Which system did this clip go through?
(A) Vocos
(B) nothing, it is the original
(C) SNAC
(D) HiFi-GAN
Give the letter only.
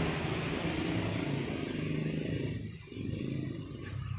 B